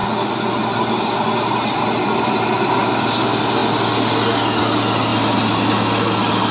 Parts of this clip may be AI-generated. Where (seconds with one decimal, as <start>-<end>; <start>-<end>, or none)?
none